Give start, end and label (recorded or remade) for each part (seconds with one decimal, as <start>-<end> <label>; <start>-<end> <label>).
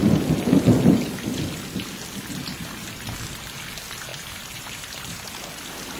0.0-4.1 recorded; 4.1-5.3 remade; 5.3-6.0 recorded